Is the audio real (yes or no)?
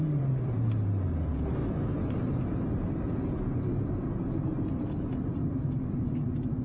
no